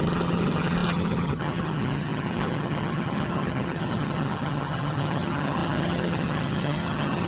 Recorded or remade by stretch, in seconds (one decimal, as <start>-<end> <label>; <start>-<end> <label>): 0.0-7.3 remade